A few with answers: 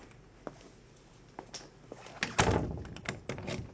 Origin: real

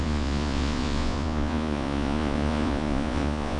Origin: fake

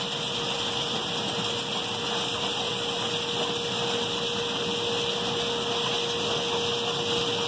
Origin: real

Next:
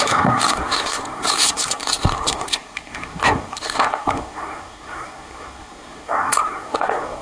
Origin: fake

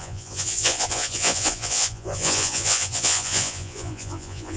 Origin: fake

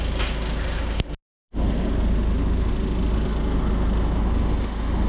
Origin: real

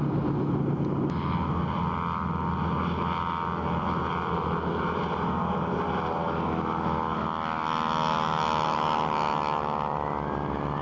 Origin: real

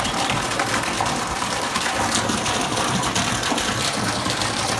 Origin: real